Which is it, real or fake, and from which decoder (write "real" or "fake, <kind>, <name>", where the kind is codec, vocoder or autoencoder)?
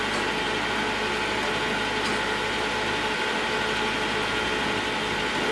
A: real